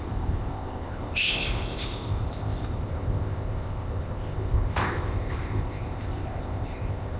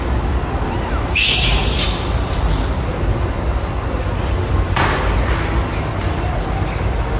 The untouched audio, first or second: second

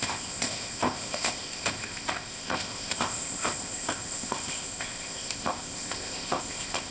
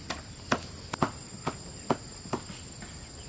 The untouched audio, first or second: second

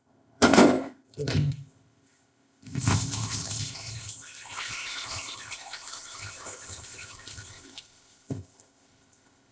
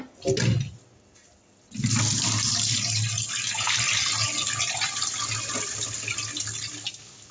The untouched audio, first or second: second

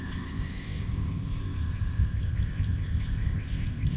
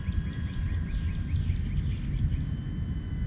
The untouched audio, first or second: second